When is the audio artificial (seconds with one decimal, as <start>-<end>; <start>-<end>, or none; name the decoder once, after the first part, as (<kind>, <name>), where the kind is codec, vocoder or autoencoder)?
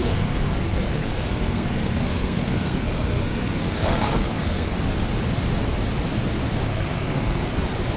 0.0-4.7 (codec, SNAC); 6.7-7.5